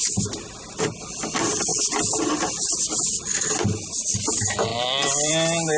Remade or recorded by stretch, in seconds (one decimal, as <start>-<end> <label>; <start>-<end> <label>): 0.0-5.8 recorded